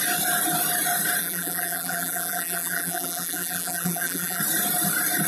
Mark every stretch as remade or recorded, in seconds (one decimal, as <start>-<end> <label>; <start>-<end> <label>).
0.0-1.2 recorded; 1.2-4.4 remade; 4.4-5.3 recorded